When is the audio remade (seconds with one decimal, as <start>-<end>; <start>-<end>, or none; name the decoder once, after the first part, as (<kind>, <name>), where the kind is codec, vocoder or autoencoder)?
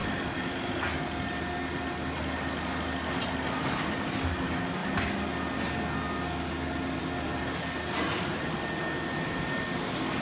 none